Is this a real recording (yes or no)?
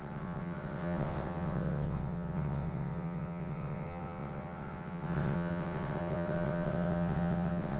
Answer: no